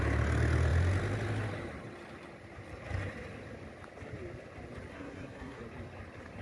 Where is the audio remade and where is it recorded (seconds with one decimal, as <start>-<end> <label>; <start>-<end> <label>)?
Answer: 0.0-4.9 recorded; 4.9-5.6 remade; 5.6-6.4 recorded